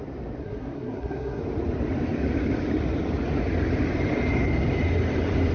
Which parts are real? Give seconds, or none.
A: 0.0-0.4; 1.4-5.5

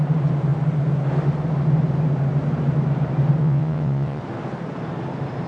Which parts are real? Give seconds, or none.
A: 0.0-3.4; 4.2-5.5

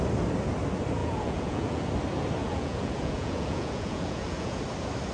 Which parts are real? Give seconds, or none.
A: 0.0-1.0; 1.8-2.4; 4.6-5.1

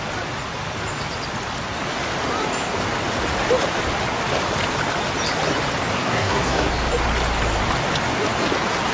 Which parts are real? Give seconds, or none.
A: 0.0-5.9; 6.7-8.9

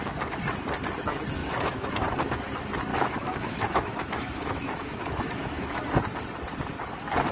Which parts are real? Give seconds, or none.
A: 0.0-1.4; 2.0-2.9; 5.8-7.3

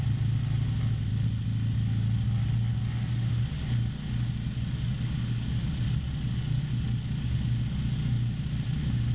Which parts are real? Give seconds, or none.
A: 0.0-9.1

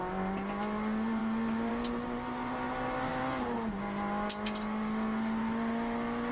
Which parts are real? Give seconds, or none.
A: 0.0-6.3